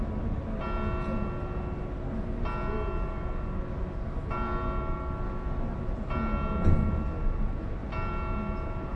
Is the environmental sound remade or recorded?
recorded